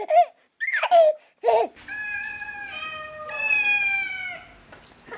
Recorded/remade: recorded